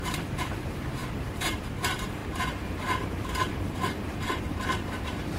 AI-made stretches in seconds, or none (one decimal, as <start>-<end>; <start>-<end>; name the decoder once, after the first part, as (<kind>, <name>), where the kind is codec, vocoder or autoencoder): 0.0-5.4 (vocoder, BigVGAN v2)